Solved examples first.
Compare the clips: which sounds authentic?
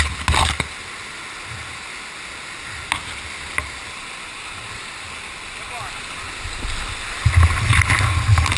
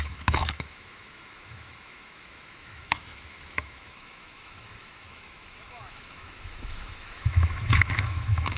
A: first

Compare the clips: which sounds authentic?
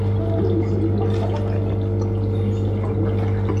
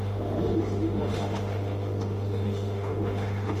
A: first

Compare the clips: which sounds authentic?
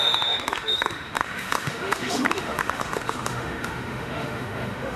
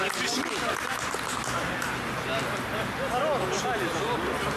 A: second